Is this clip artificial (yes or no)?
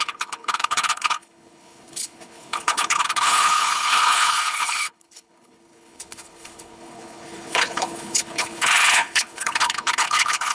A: yes